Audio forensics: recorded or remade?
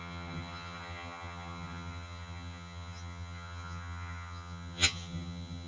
remade